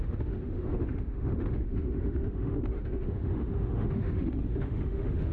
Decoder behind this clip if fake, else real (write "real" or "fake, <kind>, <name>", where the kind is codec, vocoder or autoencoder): fake, autoencoder, DAC-VAE